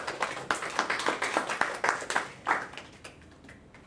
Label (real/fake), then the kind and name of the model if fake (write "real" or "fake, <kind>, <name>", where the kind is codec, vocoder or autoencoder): real